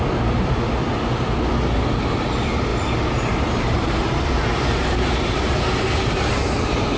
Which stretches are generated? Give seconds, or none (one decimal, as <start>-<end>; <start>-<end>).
2.7-7.0